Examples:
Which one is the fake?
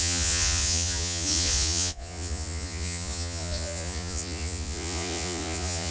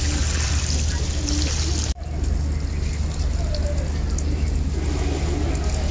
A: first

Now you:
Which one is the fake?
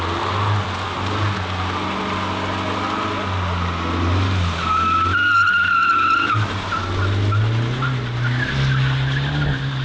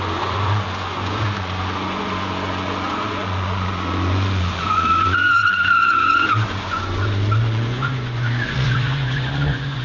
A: second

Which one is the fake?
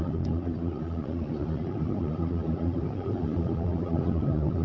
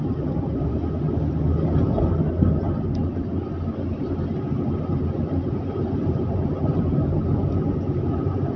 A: first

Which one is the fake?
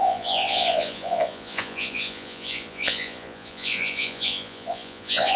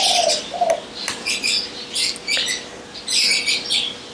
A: first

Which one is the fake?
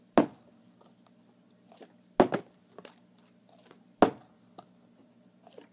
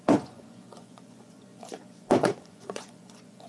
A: second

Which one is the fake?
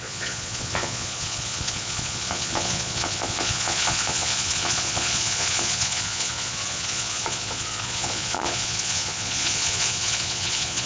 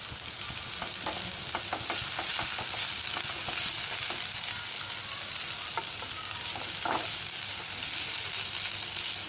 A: first